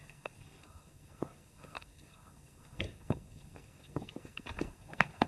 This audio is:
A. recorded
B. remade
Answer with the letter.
B